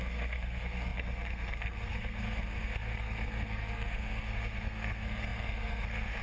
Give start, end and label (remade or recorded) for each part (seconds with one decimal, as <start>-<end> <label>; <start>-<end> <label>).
0.0-6.2 remade